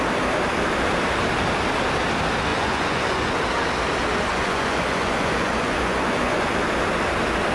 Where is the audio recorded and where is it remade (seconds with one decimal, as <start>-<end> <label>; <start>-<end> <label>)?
0.0-2.5 recorded; 2.5-3.3 remade; 3.3-4.3 recorded; 4.3-6.5 remade; 6.5-7.5 recorded

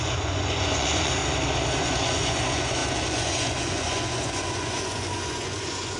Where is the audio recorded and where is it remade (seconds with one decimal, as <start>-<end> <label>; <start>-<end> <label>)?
0.0-1.2 remade; 1.2-1.8 recorded; 1.8-6.0 remade

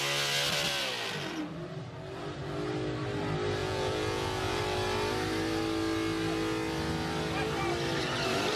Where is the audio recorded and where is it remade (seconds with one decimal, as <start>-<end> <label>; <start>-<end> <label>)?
0.0-3.6 recorded; 3.6-4.6 remade; 4.6-8.6 recorded

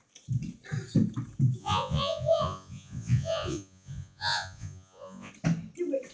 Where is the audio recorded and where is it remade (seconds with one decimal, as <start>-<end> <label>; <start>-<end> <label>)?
0.0-1.6 recorded; 1.6-5.3 remade; 5.3-6.1 recorded

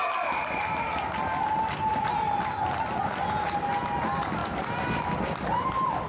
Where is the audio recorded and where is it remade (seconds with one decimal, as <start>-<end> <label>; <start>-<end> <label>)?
0.0-6.1 recorded

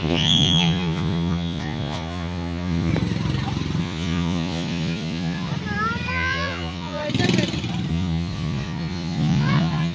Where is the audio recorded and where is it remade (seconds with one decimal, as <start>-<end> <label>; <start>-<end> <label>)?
0.0-2.9 remade; 2.9-3.8 recorded; 3.8-5.5 remade; 5.5-6.1 recorded; 6.1-7.0 remade; 7.0-7.9 recorded; 7.9-9.9 remade